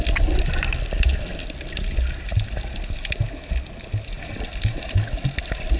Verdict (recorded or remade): recorded